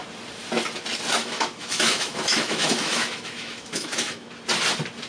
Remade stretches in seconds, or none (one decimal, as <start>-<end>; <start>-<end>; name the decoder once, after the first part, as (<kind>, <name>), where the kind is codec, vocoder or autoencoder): 1.2-4.3 (autoencoder, DAC-VAE)